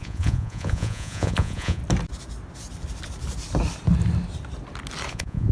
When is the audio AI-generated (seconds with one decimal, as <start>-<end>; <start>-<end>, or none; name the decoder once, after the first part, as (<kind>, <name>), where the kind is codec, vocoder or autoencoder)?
0.0-1.8 (vocoder, Vocos); 5.1-5.5